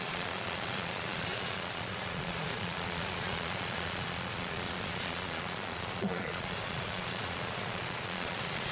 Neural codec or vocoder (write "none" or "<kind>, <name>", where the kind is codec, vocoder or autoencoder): vocoder, Vocos